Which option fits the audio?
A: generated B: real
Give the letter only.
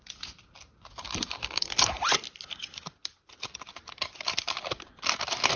B